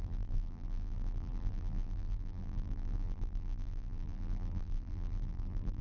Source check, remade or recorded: remade